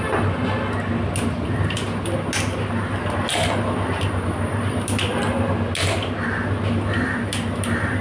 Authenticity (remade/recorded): recorded